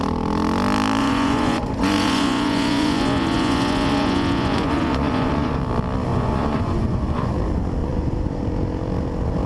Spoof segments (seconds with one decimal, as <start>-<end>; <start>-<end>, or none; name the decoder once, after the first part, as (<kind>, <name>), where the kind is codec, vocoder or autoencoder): 1.0-5.6 (vocoder, Vocos); 6.1-7.3; 7.8-8.4

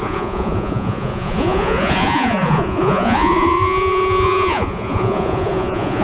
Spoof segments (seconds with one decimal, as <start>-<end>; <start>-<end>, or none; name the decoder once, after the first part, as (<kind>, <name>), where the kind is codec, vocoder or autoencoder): 0.0-6.0 (vocoder, Vocos)